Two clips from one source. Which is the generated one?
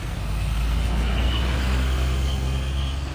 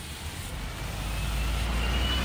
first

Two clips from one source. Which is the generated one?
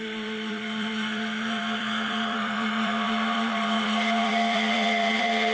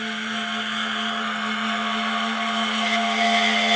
first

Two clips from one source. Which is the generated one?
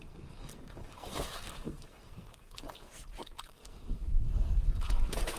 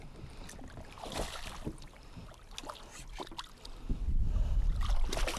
first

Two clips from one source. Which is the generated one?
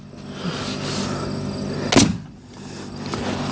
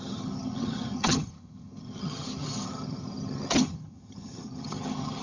second